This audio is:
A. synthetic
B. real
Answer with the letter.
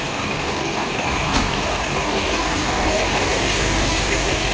A